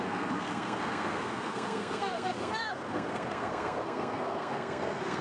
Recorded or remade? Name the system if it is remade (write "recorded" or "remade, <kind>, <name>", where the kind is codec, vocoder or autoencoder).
remade, codec, SNAC